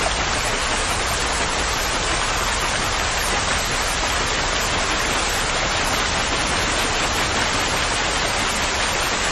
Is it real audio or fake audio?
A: real